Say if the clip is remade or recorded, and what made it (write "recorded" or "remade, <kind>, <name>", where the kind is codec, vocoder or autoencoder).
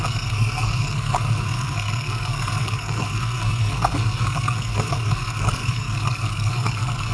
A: remade, codec, SNAC